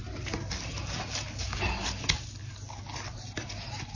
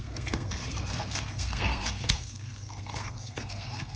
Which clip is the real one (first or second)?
first